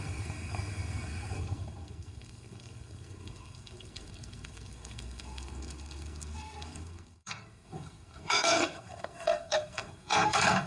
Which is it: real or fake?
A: fake